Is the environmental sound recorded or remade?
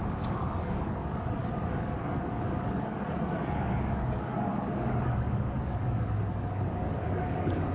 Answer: remade